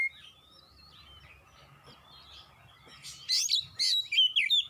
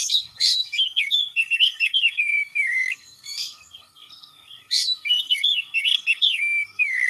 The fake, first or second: second